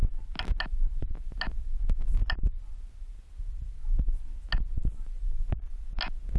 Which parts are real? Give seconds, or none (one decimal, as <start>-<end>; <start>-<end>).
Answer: 0.0-6.4